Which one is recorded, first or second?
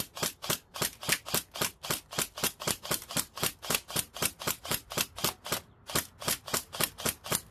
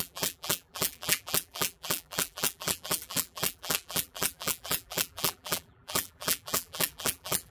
first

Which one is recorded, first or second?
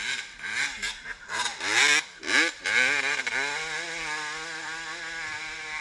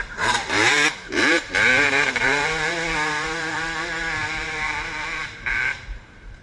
first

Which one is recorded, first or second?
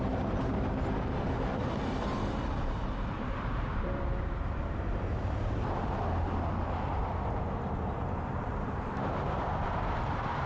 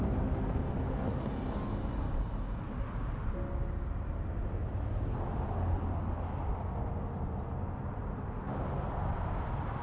second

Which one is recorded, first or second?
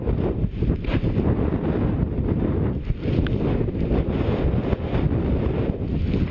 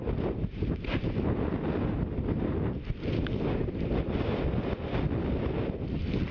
second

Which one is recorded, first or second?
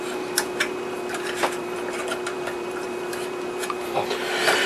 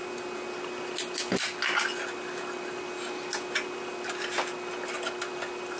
second